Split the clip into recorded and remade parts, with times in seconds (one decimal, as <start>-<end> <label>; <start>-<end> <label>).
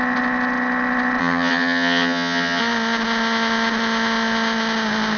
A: 0.0-1.2 recorded; 1.2-2.6 remade; 2.6-5.2 recorded